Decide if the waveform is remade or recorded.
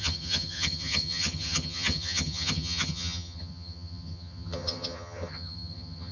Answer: remade